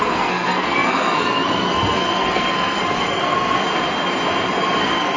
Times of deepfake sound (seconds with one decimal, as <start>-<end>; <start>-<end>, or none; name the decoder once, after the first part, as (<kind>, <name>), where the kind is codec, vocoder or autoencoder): 0.0-3.6 (codec, SNAC); 4.8-5.2